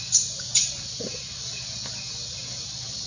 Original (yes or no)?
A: yes